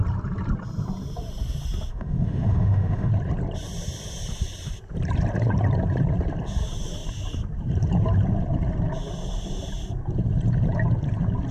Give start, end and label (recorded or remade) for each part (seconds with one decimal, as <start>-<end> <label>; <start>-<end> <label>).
0.0-1.9 recorded; 1.9-3.1 remade; 3.1-11.5 recorded